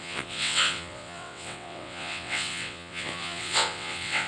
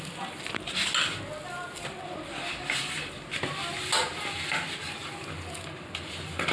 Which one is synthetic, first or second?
first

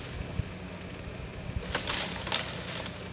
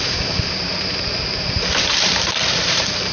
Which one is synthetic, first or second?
second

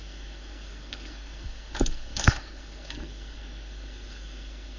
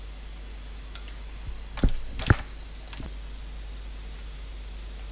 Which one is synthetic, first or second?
first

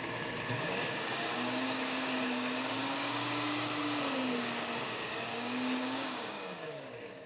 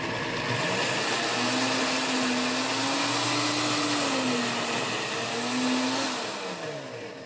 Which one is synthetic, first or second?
first